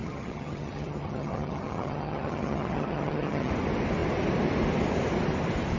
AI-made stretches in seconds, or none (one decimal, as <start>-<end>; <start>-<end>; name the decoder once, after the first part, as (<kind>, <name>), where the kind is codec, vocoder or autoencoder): 0.0-3.5 (vocoder, HiFi-GAN)